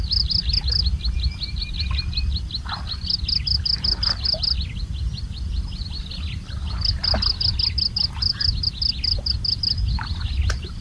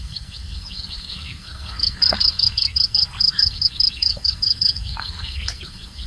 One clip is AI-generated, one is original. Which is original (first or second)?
first